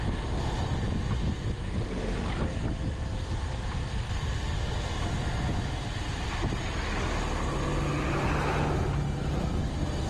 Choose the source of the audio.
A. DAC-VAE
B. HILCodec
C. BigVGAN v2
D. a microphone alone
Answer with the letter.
D